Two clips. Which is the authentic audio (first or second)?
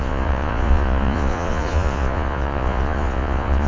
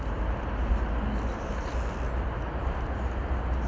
second